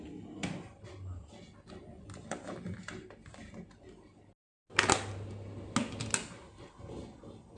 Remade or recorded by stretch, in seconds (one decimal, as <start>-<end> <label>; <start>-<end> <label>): 0.0-7.6 recorded